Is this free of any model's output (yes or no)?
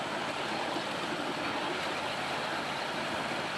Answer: yes